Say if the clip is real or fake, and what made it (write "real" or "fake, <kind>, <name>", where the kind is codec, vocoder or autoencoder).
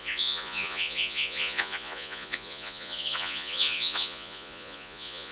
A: fake, vocoder, Vocos